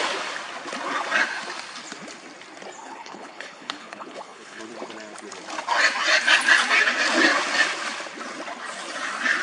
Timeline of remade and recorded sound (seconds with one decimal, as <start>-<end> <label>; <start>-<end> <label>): 0.0-2.8 recorded; 2.8-4.6 remade; 4.6-9.4 recorded

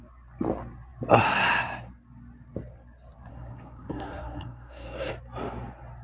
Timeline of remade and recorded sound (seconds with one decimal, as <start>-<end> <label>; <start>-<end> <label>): 0.0-3.3 recorded; 3.3-5.1 remade; 5.1-6.0 recorded

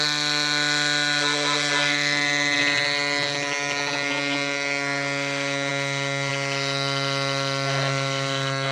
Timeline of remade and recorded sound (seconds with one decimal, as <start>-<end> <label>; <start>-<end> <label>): 0.0-8.7 recorded

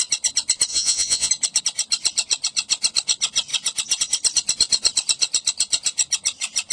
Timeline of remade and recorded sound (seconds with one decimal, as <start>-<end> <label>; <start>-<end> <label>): 0.0-0.7 recorded; 0.7-1.3 remade; 1.3-6.7 recorded

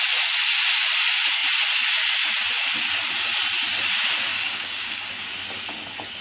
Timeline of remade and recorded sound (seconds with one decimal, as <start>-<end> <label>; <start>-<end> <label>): 0.0-4.3 recorded; 4.3-5.1 remade; 5.1-6.2 recorded

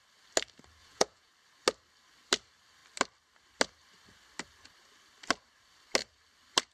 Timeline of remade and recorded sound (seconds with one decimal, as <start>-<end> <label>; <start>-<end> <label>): 0.0-0.8 recorded; 0.8-1.3 remade; 1.3-6.7 recorded

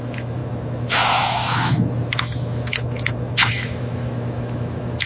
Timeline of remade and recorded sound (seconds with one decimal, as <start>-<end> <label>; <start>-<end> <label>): 0.0-0.4 remade; 0.4-3.5 recorded; 3.5-5.1 remade